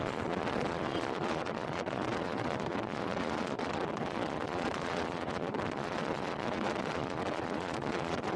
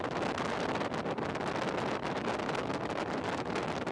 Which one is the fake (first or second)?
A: first